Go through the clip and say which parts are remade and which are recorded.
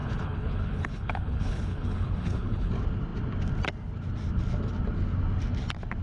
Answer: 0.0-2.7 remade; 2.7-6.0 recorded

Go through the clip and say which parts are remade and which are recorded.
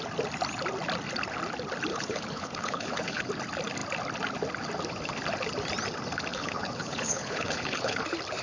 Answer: 0.0-1.9 recorded; 1.9-3.3 remade; 3.3-6.3 recorded; 6.3-8.0 remade; 8.0-8.4 recorded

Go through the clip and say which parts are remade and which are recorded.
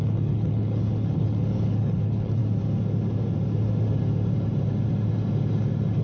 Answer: 0.0-2.4 remade; 2.4-6.0 recorded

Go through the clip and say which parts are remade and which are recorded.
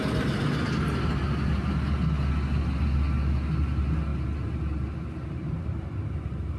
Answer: 0.0-6.6 recorded